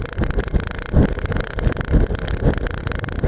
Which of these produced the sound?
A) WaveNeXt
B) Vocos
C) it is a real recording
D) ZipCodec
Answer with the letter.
C